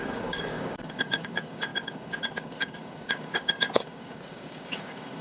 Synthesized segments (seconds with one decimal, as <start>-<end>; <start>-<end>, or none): 0.0-5.2

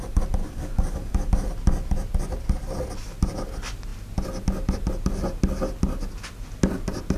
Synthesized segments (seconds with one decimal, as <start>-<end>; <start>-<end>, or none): 0.4-1.3

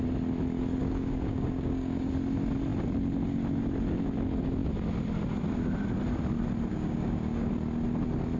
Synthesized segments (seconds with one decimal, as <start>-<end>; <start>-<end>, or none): 0.8-2.1; 6.7-7.5

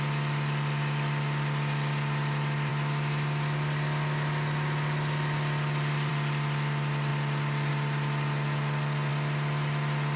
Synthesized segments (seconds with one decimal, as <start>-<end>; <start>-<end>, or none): none

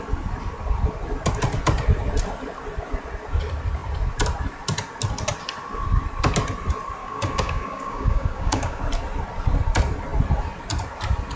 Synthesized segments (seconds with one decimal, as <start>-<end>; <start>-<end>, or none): 7.0-8.8

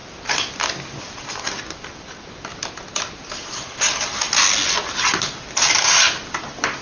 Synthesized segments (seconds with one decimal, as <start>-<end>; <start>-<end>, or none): none